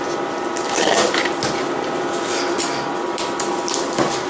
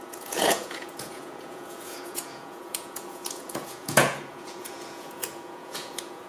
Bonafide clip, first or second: first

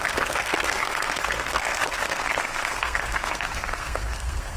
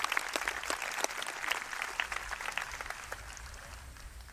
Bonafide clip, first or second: second